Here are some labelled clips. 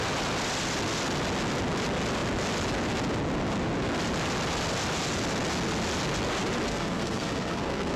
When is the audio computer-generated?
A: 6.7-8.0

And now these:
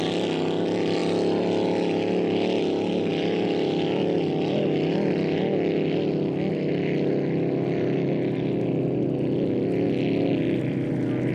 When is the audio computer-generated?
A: none

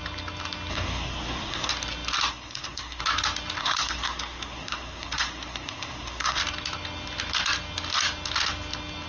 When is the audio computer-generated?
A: 0.7-1.7; 2.3-3.0; 3.6-6.4

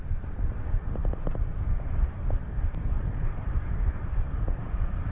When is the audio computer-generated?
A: none

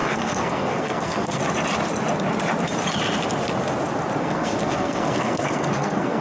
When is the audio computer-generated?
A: 0.0-1.4; 4.2-6.2

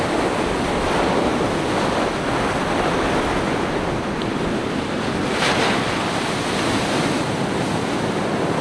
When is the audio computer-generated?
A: none